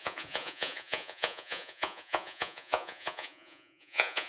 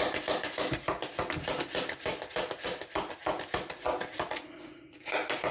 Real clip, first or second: second